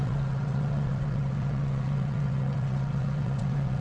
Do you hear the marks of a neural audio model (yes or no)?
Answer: yes